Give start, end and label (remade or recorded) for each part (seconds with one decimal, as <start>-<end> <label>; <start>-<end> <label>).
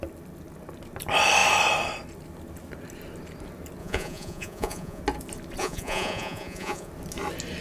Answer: 0.0-3.8 recorded; 3.8-5.0 remade; 5.0-5.6 recorded; 5.6-6.9 remade; 6.9-7.6 recorded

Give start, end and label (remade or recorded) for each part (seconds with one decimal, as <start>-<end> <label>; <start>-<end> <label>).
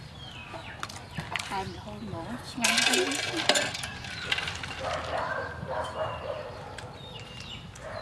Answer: 0.0-0.4 remade; 0.4-5.2 recorded; 5.2-7.0 remade; 7.0-7.5 recorded; 7.5-8.0 remade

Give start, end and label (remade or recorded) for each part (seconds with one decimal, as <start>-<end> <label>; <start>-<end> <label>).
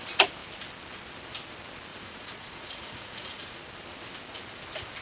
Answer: 0.0-1.9 recorded; 1.9-3.6 remade; 3.6-5.0 recorded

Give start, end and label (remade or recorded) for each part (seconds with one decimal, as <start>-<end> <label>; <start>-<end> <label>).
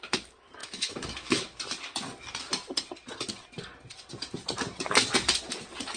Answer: 0.0-0.6 recorded; 0.6-1.6 remade; 1.6-6.0 recorded